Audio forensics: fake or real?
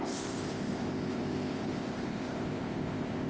fake